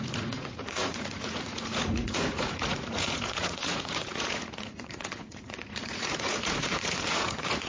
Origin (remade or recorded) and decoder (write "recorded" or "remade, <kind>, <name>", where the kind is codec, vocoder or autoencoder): remade, vocoder, Vocos